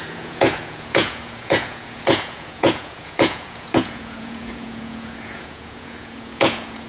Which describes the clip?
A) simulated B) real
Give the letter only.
A